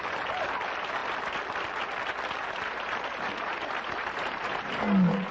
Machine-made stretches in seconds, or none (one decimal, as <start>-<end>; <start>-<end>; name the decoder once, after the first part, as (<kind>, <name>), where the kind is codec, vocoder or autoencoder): 2.4-4.8 (vocoder, BigVGAN v2)